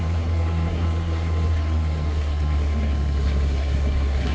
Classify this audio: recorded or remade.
remade